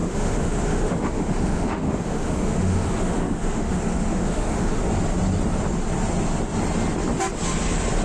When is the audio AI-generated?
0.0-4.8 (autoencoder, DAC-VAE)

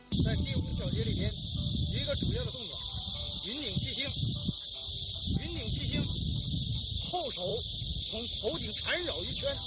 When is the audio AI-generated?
none

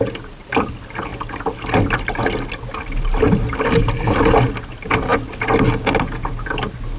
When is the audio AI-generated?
none

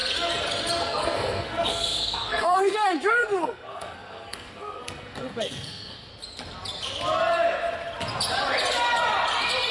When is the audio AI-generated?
0.8-6.1 (codec, SNAC)

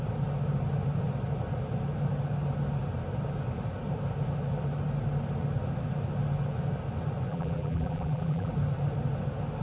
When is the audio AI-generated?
7.3-8.5 (vocoder, BigVGAN v2)

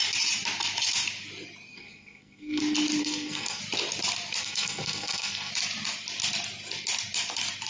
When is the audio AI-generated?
1.7-2.6 (codec, SNAC); 3.0-3.6; 4.4-5.5

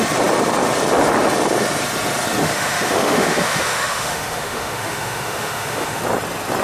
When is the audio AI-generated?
2.4-6.0 (autoencoder, DAC-VAE)

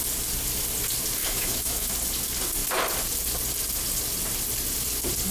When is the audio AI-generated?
1.2-1.9 (autoencoder, DAC-VAE)